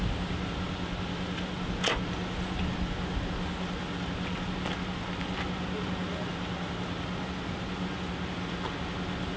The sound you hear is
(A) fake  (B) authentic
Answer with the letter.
B